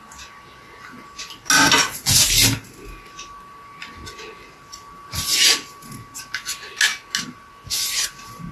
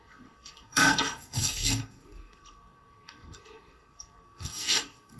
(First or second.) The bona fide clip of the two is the first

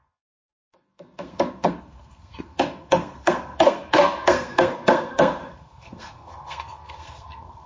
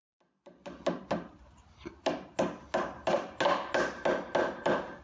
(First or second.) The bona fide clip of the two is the second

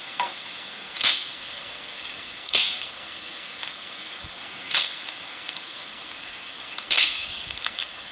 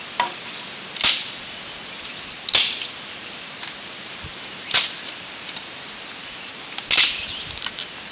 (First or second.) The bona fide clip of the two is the second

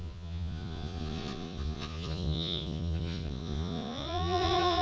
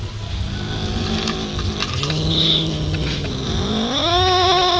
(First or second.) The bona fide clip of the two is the second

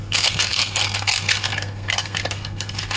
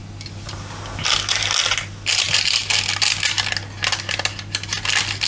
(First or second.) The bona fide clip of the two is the second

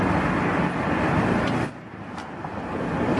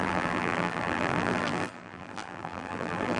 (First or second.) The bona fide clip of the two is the first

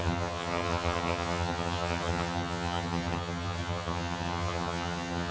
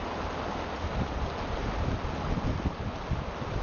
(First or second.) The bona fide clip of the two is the second